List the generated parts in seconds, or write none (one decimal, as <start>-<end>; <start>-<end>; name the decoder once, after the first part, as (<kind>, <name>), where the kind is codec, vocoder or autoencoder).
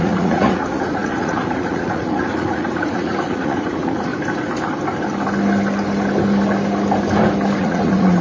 0.0-4.1 (vocoder, Vocos); 7.6-8.2